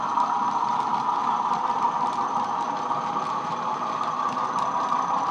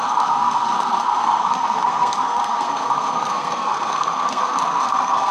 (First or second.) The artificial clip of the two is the second